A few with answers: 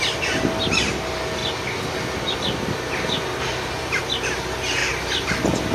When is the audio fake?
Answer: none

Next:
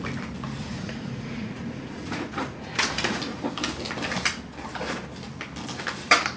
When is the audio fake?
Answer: 0.6-3.2 (vocoder, Vocos)

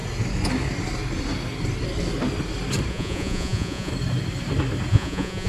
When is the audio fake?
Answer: 2.9-3.9 (vocoder, Vocos); 4.9-5.5

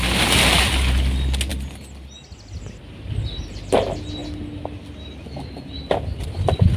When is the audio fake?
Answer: none

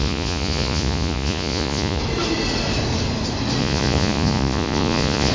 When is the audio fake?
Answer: 0.0-2.0 (vocoder, Vocos); 3.6-5.3

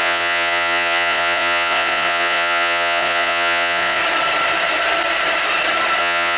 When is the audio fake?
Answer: 0.0-4.0 (vocoder, Vocos); 6.0-6.4